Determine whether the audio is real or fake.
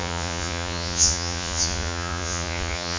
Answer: fake